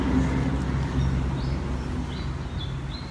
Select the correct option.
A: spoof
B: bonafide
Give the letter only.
B